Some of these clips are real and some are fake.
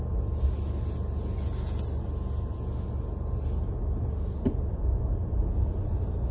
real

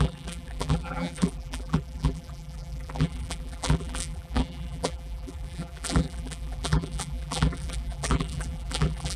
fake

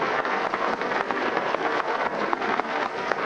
fake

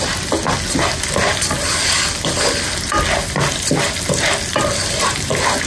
real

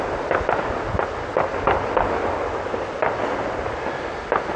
real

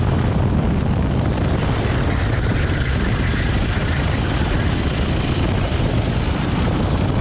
real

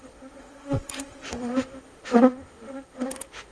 fake